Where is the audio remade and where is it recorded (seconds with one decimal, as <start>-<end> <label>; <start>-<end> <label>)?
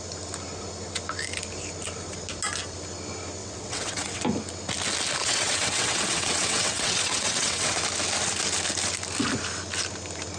0.0-3.4 recorded; 3.4-4.2 remade; 4.2-5.2 recorded; 5.2-7.8 remade; 7.8-10.4 recorded